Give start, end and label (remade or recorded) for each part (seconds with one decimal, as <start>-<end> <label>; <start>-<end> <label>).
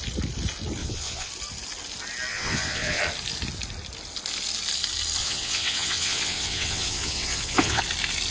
0.0-0.8 recorded; 0.8-1.3 remade; 1.3-2.3 recorded; 2.3-3.0 remade; 3.0-5.2 recorded; 5.2-7.8 remade; 7.8-8.3 recorded